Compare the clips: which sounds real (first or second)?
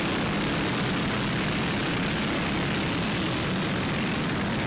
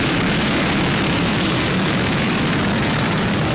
first